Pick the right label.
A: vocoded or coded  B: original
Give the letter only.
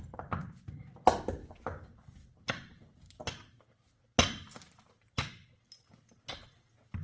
B